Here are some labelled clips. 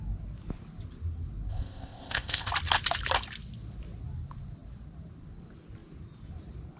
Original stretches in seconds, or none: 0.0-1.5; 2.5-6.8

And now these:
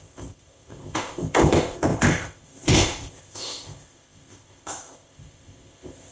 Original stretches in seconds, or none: none

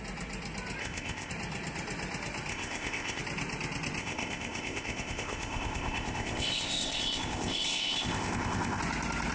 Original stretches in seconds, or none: 0.0-0.8; 1.3-2.5; 3.2-4.0; 8.8-9.3

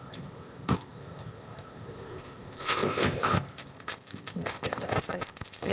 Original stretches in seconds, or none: none

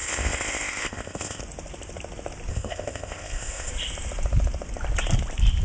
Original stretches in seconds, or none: 1.4-2.5; 3.7-5.6